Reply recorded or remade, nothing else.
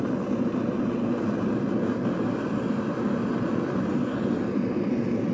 recorded